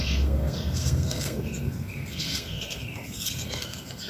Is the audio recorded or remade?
remade